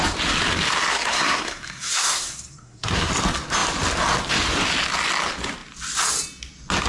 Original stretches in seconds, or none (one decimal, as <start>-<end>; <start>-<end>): 0.0-0.9; 3.1-6.9